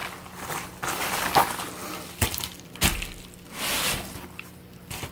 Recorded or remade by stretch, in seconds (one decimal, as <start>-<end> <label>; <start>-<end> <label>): 0.0-1.3 remade; 1.3-1.8 recorded; 1.8-5.1 remade